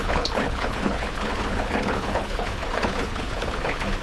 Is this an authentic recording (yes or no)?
no